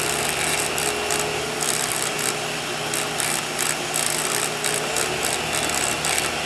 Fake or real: real